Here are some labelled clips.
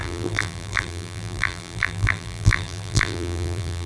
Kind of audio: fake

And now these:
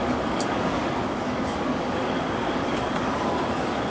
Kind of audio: fake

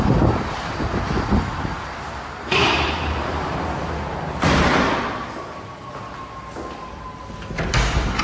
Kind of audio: real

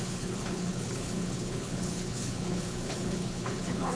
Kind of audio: fake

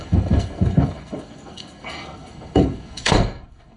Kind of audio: fake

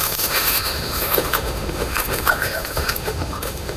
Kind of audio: fake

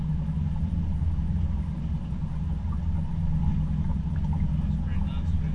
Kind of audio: real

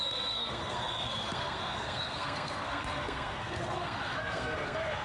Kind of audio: fake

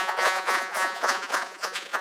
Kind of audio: fake